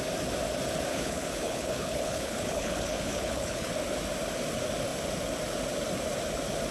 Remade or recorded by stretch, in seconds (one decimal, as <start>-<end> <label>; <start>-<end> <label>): 0.0-0.9 recorded; 0.9-3.7 remade; 3.7-6.7 recorded

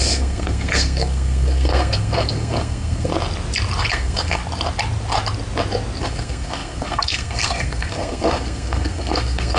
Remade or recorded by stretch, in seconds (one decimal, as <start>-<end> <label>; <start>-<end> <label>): 0.0-3.1 remade; 3.1-3.9 recorded; 3.9-4.4 remade; 4.4-6.0 recorded; 6.0-9.6 remade